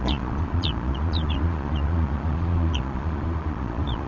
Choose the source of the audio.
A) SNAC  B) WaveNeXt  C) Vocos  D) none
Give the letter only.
C